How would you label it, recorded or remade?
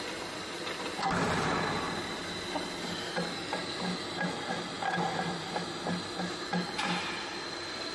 recorded